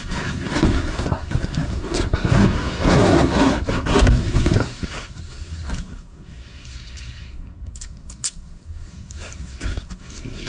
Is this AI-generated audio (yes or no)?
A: yes